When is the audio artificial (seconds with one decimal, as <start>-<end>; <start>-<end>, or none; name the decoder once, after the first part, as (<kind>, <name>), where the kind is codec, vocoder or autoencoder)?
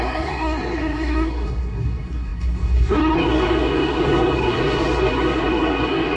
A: 0.0-6.2 (codec, SNAC)